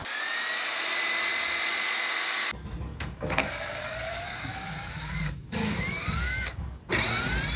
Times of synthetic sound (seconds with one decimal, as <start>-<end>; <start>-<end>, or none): 2.9-6.9